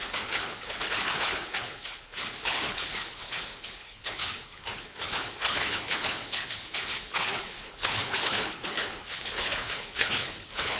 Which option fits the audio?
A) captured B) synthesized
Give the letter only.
B